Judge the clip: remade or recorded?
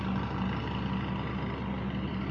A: recorded